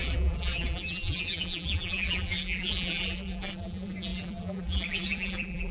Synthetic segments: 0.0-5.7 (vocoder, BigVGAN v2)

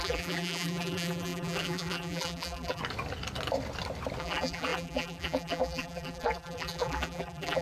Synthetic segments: 0.0-2.8 (vocoder, BigVGAN v2); 4.2-7.6